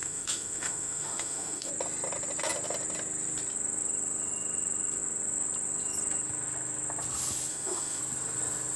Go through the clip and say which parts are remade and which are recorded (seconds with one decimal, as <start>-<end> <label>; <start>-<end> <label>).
0.0-1.7 remade; 1.7-7.5 recorded; 7.5-8.0 remade; 8.0-8.8 recorded